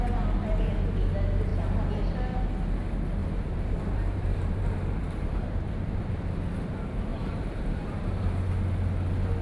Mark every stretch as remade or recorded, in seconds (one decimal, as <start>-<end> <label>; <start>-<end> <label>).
0.0-3.2 recorded; 3.2-6.0 remade; 6.0-7.1 recorded; 7.1-8.4 remade; 8.4-9.4 recorded